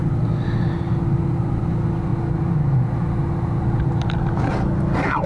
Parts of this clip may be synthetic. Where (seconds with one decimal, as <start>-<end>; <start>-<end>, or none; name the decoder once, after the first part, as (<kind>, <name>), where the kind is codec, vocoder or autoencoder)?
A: none